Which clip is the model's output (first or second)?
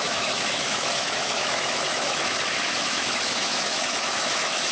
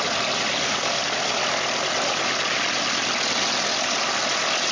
first